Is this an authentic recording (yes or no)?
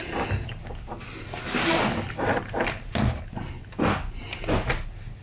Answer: yes